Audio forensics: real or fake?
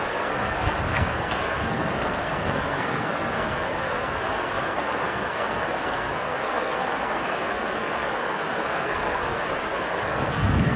fake